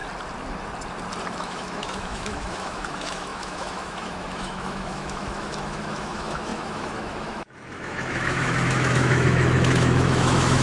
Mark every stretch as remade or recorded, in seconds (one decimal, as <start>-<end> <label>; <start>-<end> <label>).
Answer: 0.0-1.4 recorded; 1.4-10.6 remade